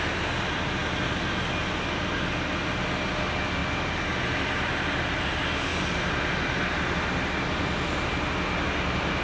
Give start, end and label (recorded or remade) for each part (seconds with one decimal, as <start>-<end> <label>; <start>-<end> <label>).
0.0-9.2 recorded